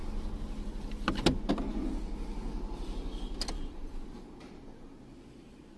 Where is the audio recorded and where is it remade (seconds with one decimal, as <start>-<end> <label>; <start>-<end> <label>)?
0.0-5.8 recorded